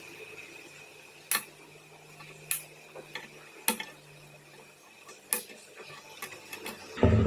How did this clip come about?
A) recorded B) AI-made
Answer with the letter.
A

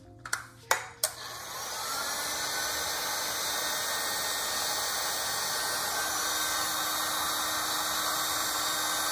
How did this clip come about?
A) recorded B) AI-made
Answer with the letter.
A